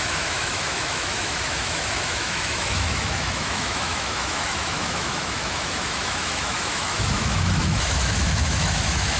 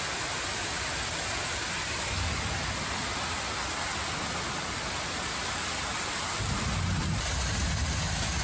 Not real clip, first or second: first